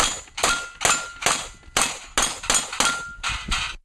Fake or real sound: real